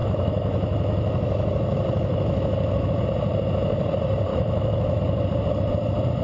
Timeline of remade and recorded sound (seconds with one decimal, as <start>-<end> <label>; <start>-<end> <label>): 0.0-3.0 remade; 3.0-4.3 recorded; 4.3-5.0 remade; 5.0-6.2 recorded